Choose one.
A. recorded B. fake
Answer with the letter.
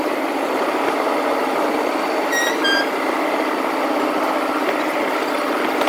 A